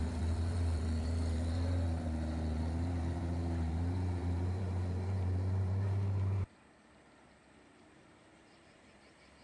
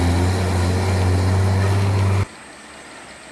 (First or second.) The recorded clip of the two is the second